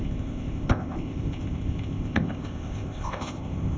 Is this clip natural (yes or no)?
no